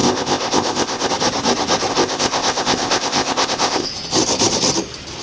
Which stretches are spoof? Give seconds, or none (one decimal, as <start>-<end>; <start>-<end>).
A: 0.0-1.1; 1.9-3.9